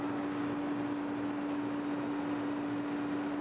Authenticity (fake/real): real